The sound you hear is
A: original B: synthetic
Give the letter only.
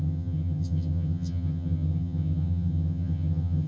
B